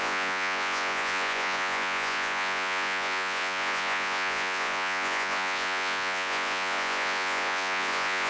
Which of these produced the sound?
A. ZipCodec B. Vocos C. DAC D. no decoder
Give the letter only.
B